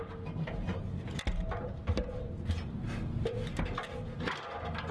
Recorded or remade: recorded